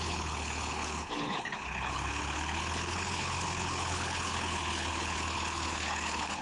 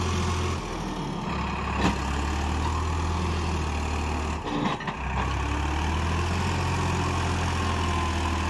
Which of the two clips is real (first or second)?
second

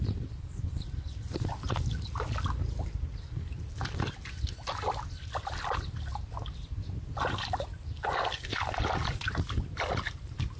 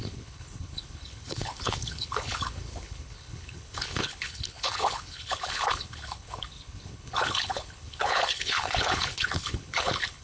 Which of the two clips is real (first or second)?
first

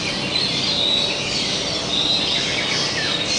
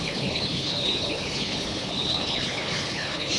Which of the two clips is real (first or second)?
first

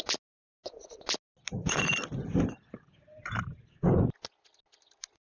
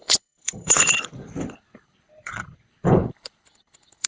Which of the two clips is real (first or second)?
first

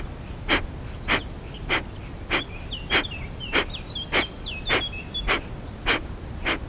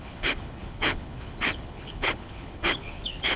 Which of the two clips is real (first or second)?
first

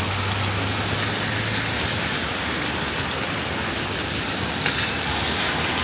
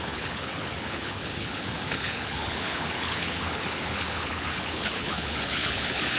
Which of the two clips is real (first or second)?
first